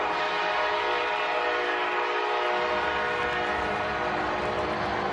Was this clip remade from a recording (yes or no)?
no